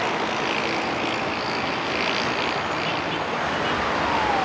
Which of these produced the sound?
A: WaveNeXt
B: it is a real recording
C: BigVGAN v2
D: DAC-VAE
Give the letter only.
B